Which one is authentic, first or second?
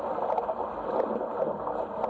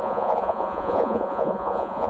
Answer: first